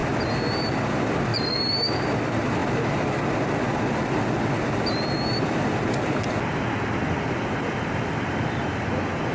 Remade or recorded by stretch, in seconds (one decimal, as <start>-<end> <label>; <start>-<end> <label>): 0.0-9.3 recorded